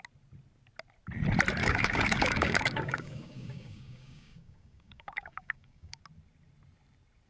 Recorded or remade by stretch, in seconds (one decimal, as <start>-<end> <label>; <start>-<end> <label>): 0.0-1.6 recorded; 1.6-6.0 remade; 6.0-7.3 recorded